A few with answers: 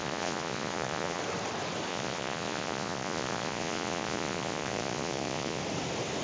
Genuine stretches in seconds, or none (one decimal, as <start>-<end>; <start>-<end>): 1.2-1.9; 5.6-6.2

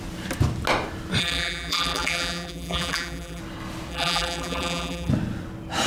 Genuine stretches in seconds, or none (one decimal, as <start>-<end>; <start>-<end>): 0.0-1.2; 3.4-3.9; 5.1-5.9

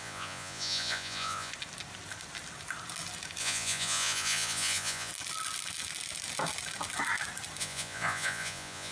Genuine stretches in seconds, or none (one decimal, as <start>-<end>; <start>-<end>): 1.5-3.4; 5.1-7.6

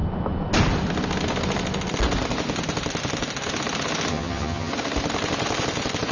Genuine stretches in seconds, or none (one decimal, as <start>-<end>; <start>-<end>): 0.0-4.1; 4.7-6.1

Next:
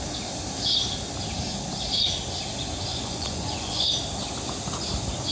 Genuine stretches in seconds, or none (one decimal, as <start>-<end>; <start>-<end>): 0.0-2.9; 3.9-5.3

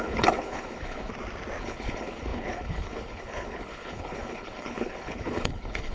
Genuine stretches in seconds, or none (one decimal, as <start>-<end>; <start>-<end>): 1.1-1.6

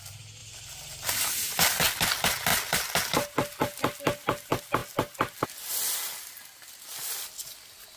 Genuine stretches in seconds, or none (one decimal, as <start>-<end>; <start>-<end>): 0.0-8.0

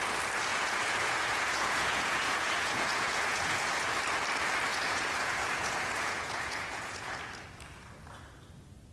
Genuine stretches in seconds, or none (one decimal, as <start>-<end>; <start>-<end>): 0.0-0.5; 3.8-4.7; 7.1-8.9